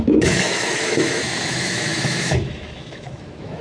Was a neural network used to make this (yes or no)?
yes